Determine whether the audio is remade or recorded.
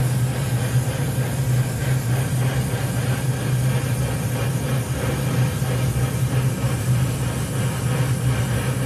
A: recorded